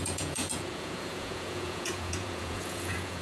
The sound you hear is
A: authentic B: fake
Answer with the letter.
B